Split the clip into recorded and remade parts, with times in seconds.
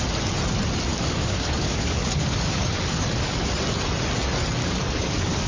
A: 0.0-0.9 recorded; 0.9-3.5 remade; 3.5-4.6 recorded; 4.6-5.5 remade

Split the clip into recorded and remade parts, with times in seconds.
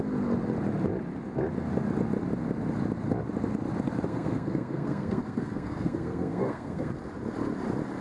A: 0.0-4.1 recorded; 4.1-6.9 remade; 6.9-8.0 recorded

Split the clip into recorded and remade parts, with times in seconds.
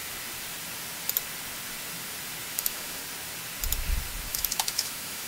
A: 0.0-2.5 recorded; 2.5-3.0 remade; 3.0-4.3 recorded; 4.3-5.3 remade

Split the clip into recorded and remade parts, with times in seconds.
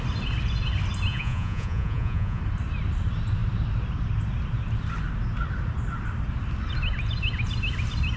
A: 0.0-1.1 recorded; 1.1-2.4 remade; 2.4-8.2 recorded